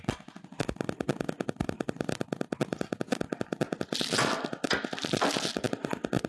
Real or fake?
real